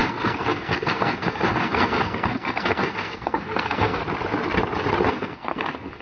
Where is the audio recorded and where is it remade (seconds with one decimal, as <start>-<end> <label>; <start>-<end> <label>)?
0.0-4.0 remade; 4.0-5.1 recorded; 5.1-6.0 remade